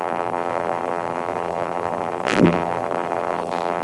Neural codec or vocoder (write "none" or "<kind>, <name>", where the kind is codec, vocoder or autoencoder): vocoder, BigVGAN v2